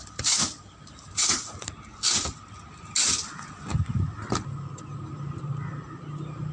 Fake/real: real